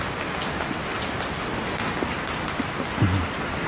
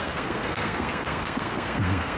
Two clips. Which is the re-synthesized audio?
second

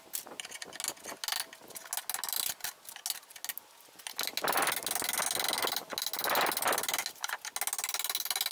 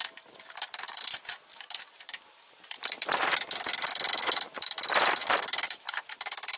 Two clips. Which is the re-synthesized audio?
second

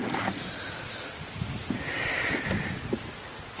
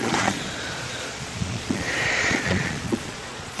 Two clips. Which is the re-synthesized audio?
second